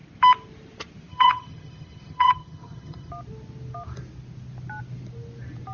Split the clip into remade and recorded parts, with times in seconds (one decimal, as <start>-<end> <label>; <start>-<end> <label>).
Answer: 0.0-1.1 recorded; 1.1-3.1 remade; 3.1-5.7 recorded